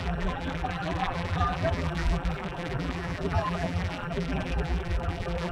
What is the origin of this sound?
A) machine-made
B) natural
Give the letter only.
A